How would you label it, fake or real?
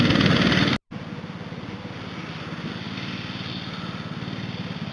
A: real